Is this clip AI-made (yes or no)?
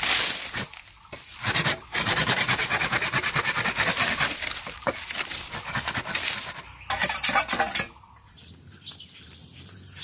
no